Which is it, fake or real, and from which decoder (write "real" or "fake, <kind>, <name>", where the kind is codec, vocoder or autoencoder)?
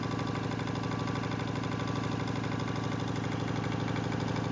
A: real